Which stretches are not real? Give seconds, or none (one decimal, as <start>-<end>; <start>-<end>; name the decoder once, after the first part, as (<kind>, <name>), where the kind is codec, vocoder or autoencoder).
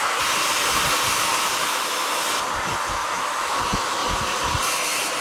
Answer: 1.6-2.1 (autoencoder, DAC-VAE); 3.0-3.6